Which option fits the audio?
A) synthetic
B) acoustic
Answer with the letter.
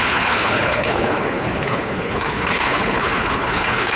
A